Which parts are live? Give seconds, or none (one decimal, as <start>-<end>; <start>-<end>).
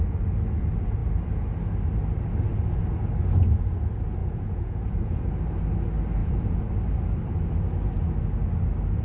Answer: 0.0-4.2; 5.3-6.2; 6.7-9.0